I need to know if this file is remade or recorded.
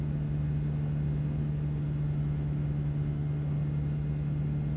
recorded